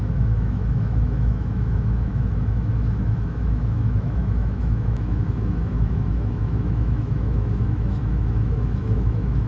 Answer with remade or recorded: remade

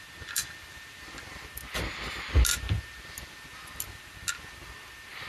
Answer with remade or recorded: recorded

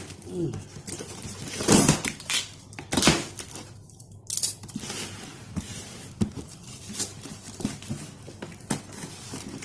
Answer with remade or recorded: recorded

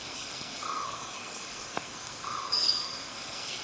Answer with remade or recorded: remade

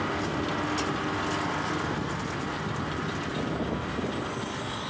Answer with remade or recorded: recorded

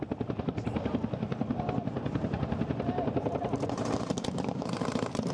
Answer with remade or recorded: remade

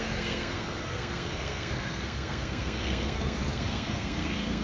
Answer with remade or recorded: remade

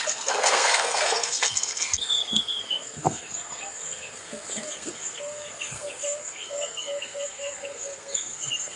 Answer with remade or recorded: remade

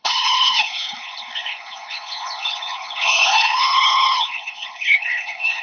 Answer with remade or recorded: remade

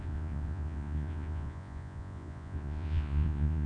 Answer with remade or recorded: remade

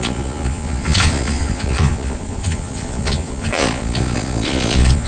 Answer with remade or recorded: remade